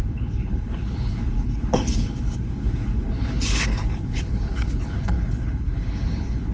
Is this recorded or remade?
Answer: remade